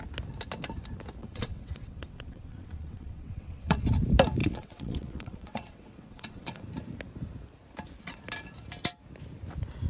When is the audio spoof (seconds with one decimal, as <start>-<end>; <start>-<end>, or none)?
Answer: 1.2-3.8; 4.4-6.6